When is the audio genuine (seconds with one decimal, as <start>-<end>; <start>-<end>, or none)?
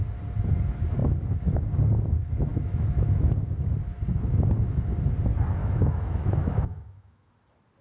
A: 0.0-2.5; 3.4-5.6; 7.3-7.8